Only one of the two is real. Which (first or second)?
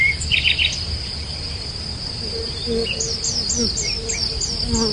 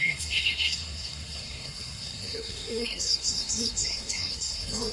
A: first